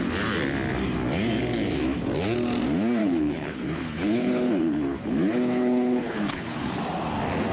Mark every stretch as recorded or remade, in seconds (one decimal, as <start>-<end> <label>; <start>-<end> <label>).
0.0-3.0 recorded; 3.0-6.8 remade; 6.8-7.5 recorded